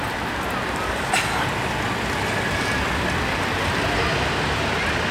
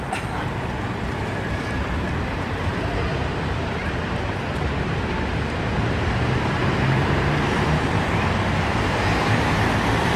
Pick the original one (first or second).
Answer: first